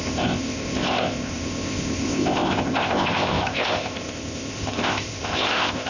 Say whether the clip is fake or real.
fake